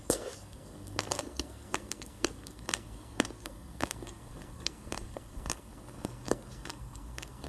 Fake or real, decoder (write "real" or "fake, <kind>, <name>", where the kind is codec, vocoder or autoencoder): fake, codec, SNAC